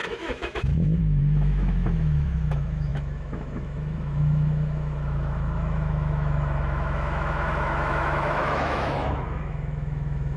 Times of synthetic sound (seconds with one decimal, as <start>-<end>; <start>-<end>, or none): 0.0-10.4